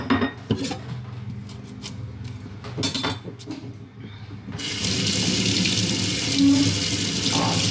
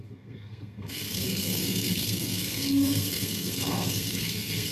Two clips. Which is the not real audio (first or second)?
second